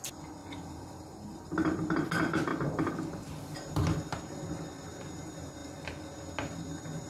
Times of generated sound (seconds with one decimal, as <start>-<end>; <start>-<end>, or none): 0.4-2.1; 2.5-4.3